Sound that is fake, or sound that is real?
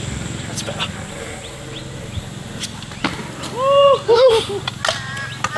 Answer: real